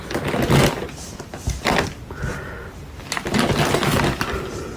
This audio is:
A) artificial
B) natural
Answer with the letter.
B